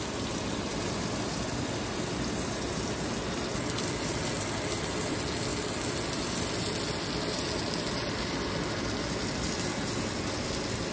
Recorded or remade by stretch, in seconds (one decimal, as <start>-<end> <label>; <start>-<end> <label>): 0.0-10.9 recorded